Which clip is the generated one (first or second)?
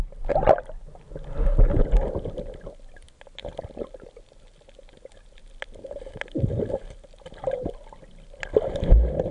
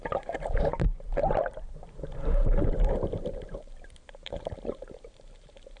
second